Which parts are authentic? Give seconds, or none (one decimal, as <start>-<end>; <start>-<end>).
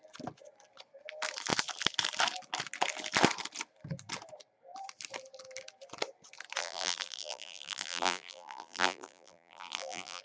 0.0-6.6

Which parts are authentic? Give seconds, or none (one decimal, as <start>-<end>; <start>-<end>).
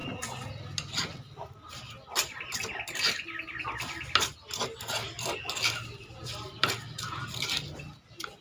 0.0-4.8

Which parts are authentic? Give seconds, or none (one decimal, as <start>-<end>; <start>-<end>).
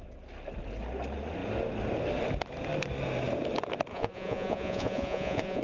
0.0-3.9